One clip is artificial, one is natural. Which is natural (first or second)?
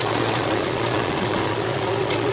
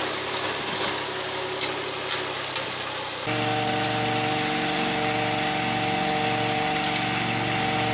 second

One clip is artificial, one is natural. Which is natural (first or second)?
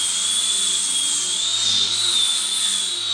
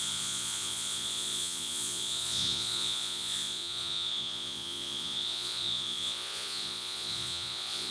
first